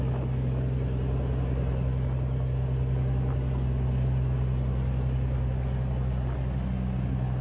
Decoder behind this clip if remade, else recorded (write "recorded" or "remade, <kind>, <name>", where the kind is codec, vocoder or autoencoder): recorded